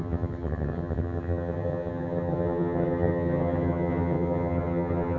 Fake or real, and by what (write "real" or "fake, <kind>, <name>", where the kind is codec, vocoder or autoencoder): fake, vocoder, HiFi-GAN